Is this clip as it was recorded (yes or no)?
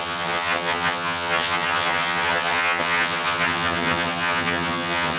no